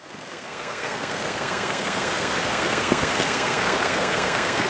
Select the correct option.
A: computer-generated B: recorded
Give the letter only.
A